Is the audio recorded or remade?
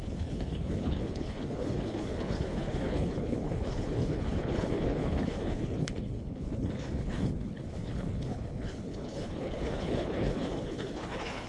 remade